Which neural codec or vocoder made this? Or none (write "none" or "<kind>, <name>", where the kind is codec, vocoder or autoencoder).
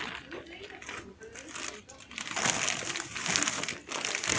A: none